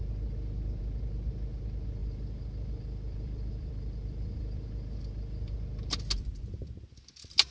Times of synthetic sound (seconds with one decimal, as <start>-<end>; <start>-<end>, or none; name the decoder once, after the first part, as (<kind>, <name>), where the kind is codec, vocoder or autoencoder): 2.0-5.6 (vocoder, BigVGAN v2)